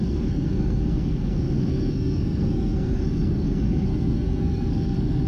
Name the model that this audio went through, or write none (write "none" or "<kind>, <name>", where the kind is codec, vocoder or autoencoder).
codec, SNAC